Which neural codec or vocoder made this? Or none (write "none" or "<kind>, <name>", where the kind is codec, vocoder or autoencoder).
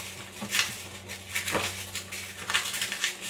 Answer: none